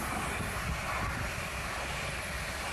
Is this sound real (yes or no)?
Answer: yes